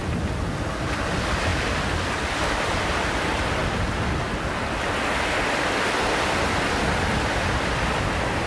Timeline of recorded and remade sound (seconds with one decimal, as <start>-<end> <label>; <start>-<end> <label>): 0.0-8.5 recorded